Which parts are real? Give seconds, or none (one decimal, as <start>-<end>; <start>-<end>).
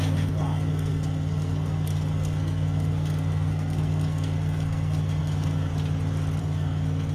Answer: 5.7-6.4